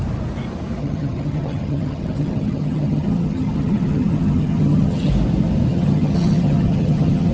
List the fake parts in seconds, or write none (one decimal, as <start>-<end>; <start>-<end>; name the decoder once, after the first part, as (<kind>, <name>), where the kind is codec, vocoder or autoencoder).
0.8-5.1 (vocoder, HiFi-GAN); 5.7-7.3